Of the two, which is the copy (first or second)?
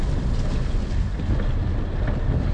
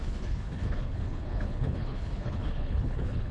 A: second